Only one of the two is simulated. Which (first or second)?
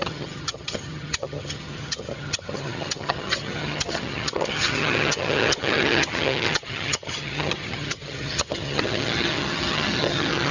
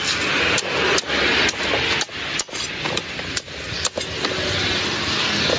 first